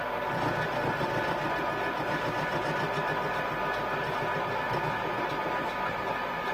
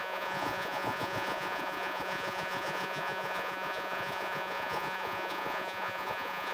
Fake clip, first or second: second